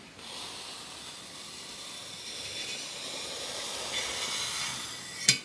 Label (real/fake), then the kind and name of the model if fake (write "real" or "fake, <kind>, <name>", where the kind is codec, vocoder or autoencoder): real